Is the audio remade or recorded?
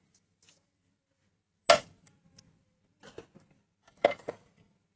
recorded